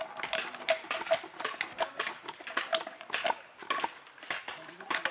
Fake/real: real